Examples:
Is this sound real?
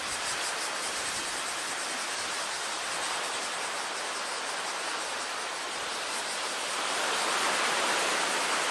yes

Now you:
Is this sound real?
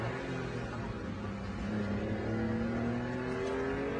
yes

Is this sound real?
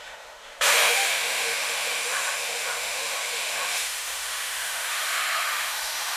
no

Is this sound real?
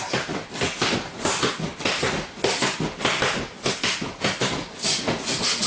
yes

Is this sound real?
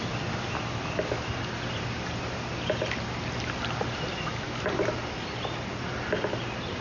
yes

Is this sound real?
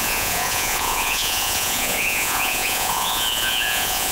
no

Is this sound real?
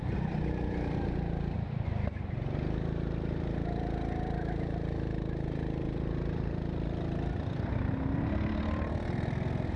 yes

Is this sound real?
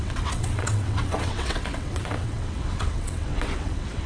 no